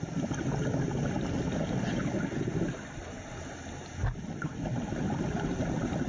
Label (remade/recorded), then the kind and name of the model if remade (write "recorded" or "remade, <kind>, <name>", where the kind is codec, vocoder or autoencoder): recorded